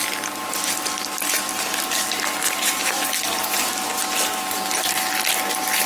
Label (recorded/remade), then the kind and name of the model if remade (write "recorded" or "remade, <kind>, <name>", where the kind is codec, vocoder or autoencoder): recorded